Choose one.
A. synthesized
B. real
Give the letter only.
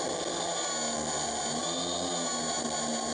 B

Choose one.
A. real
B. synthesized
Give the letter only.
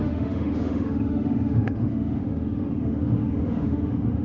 B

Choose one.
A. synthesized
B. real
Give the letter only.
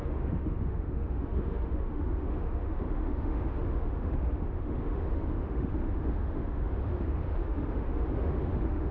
A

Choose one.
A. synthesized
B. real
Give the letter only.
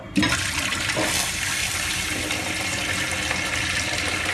B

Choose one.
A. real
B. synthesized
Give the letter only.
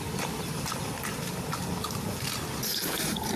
A